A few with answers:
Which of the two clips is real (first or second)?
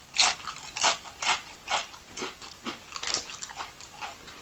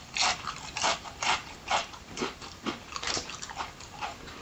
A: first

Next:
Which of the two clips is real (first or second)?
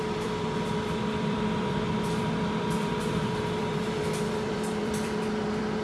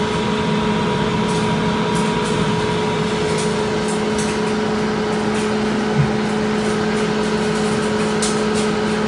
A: second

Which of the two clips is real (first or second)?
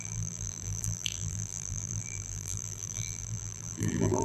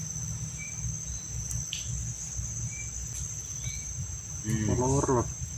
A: second